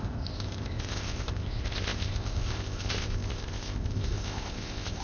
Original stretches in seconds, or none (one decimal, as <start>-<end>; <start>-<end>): none